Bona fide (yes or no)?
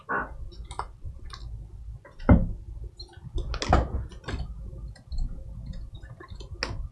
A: yes